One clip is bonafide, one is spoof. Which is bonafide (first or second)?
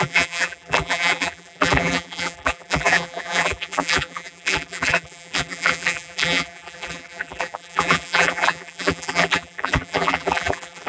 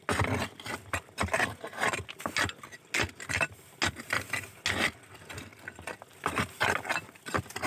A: second